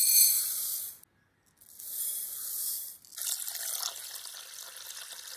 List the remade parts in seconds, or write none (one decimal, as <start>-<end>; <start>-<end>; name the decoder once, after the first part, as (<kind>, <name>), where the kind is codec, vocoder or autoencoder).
none